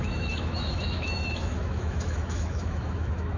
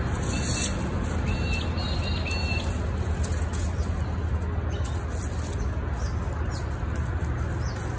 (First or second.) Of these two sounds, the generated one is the first